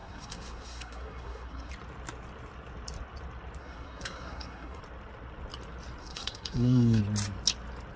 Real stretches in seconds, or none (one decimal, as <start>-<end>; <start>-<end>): 1.7-3.6; 4.8-6.0; 7.0-8.0